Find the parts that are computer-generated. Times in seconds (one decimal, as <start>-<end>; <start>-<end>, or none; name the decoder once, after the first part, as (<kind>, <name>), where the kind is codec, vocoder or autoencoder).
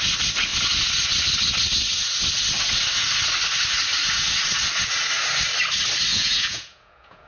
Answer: 6.1-7.3 (vocoder, Vocos)